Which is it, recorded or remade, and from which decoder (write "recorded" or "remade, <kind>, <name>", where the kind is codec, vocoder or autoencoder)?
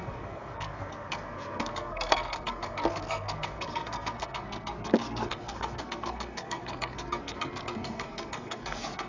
remade, codec, SNAC